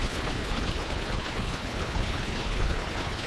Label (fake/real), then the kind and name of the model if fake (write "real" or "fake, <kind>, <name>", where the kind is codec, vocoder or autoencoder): fake, codec, HILCodec